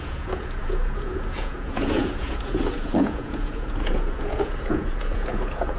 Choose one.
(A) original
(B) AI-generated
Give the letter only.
B